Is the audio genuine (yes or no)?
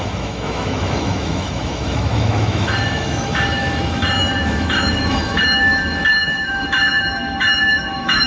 no